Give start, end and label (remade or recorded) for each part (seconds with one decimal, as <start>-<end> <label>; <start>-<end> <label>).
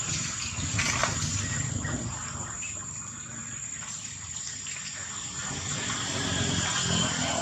0.0-1.0 recorded; 1.0-1.7 remade; 1.7-3.4 recorded; 3.4-5.1 remade; 5.1-7.4 recorded